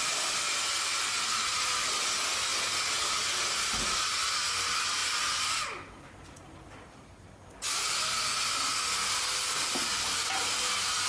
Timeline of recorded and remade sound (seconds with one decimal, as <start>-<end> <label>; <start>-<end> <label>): 0.0-9.9 recorded; 9.9-10.7 remade; 10.7-11.1 recorded